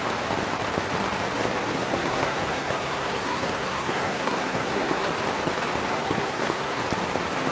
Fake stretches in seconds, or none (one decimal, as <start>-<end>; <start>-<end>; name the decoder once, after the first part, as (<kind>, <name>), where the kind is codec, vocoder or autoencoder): 1.7-5.0 (codec, SNAC); 5.9-6.8